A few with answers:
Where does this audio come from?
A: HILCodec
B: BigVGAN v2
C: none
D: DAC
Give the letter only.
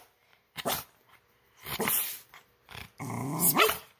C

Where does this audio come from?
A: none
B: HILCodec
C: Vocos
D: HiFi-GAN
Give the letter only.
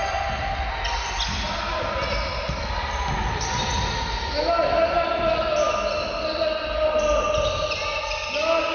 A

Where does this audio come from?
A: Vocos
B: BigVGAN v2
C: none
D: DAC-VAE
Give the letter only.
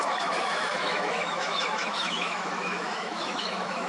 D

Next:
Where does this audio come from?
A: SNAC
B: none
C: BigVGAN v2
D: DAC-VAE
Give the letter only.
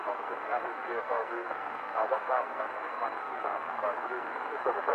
A